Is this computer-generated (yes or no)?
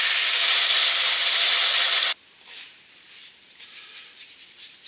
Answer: no